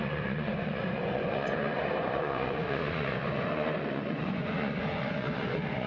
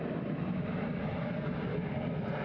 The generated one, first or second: first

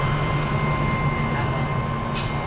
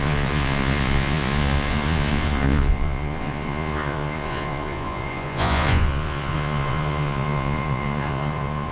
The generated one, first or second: second